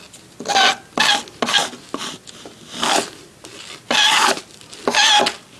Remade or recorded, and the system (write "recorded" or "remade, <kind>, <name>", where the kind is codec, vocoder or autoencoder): recorded